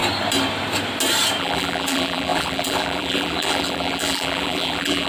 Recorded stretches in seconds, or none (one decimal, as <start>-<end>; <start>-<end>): 0.0-1.4